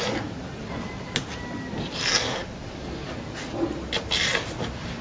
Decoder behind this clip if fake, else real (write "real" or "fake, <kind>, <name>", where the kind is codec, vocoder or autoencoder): real